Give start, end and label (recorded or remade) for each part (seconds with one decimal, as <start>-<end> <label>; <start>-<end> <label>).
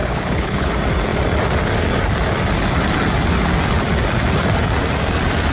0.0-0.7 remade; 0.7-5.5 recorded